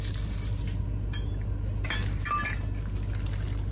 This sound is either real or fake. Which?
real